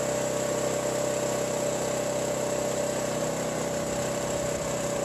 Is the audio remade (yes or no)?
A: no